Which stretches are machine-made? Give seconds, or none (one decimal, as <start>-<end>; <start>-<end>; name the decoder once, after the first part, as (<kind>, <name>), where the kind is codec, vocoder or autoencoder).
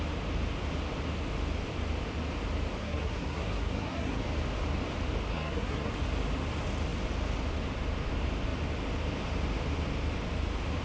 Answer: 2.8-4.2 (codec, SNAC); 5.3-5.9